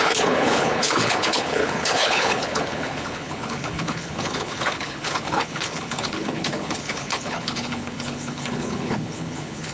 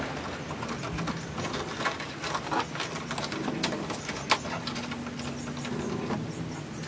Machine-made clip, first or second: first